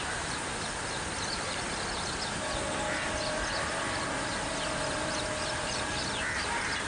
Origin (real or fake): real